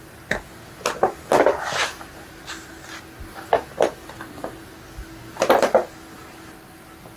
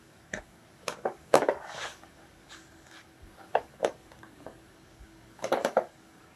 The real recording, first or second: first